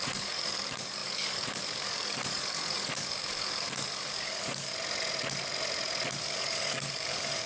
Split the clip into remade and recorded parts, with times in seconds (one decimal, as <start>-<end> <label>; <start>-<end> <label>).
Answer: 0.0-4.7 remade; 4.7-6.2 recorded; 6.2-7.5 remade